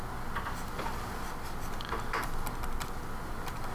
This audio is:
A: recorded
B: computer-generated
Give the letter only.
A